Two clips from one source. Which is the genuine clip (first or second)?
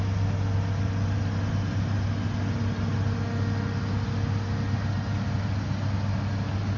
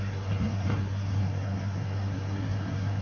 first